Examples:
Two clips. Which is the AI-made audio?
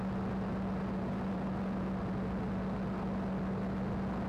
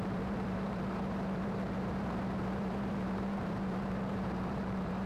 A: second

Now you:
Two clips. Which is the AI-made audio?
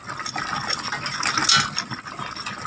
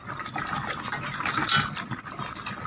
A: second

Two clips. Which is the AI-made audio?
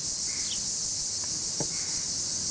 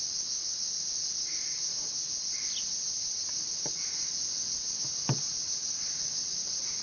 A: second